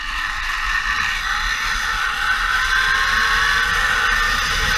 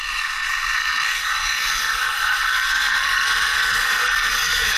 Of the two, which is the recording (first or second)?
first